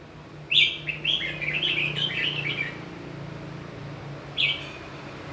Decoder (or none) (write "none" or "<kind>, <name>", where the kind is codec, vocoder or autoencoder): none